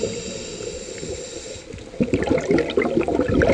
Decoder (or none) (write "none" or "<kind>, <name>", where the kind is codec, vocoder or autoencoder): none